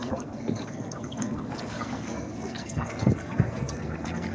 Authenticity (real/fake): fake